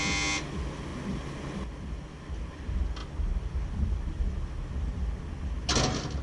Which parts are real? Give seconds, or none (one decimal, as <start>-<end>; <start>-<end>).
0.0-6.2